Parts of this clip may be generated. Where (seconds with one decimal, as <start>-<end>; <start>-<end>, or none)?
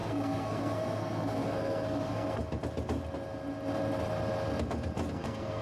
0.0-2.4; 5.1-5.6